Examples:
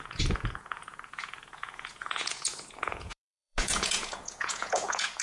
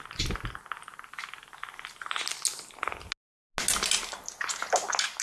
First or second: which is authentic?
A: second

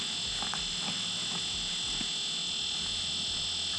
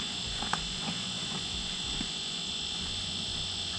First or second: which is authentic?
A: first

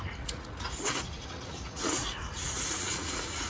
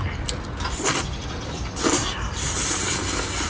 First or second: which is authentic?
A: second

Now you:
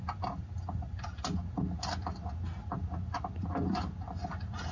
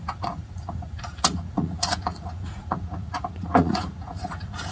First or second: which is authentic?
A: first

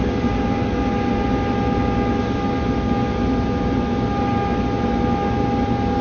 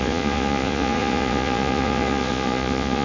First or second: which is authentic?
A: first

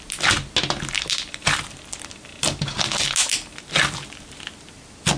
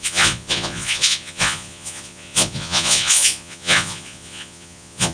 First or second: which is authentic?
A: first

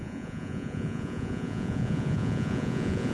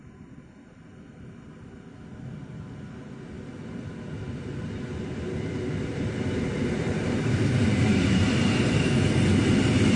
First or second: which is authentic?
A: second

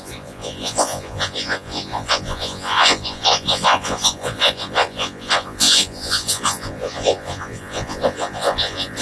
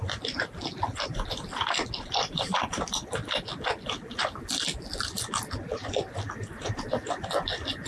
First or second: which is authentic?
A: second